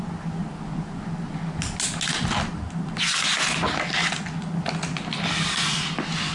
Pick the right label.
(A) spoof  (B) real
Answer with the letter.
B